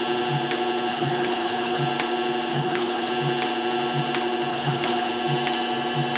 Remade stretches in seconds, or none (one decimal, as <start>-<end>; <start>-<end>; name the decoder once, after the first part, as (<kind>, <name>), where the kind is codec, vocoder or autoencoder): 0.9-1.8 (codec, HILCodec); 2.5-3.1; 4.5-5.1